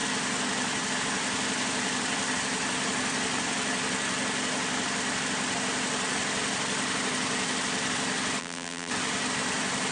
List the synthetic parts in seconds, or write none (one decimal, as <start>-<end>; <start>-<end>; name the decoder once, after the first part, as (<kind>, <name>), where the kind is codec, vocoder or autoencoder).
8.4-8.9 (vocoder, BigVGAN v2)